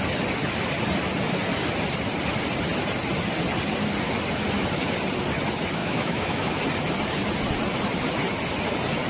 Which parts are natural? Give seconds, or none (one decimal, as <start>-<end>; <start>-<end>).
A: 0.0-5.8; 6.6-9.1